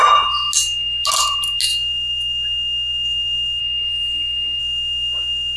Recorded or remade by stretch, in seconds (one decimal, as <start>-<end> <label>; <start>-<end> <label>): 0.0-1.7 recorded; 1.7-3.6 remade; 3.6-4.6 recorded; 4.6-5.6 remade